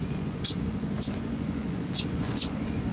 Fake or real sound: fake